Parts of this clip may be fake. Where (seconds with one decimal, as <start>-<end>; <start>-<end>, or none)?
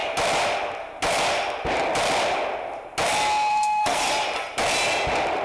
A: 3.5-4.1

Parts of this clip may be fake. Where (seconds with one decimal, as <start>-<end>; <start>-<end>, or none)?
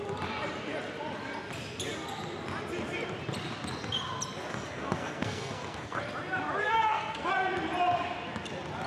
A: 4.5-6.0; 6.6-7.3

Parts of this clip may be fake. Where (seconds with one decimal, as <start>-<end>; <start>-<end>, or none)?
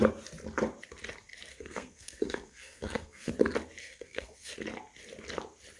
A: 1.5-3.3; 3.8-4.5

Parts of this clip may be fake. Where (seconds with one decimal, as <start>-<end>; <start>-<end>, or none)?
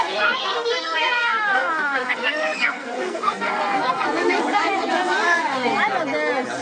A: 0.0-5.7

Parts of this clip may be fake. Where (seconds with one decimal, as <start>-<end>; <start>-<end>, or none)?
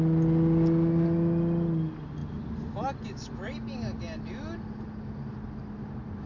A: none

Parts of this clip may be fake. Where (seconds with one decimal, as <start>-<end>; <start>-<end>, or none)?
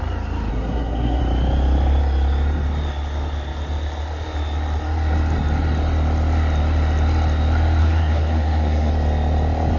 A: 0.5-1.2; 7.8-8.9